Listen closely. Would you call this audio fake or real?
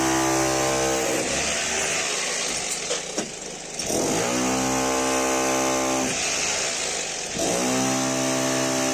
real